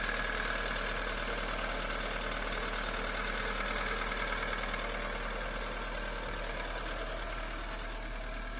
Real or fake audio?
real